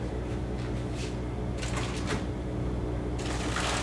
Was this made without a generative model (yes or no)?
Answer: yes